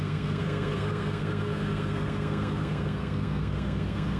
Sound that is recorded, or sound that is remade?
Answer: remade